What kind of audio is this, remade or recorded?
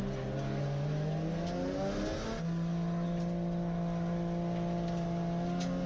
recorded